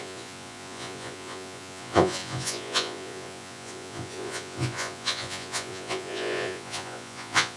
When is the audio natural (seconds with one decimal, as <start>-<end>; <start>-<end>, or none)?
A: none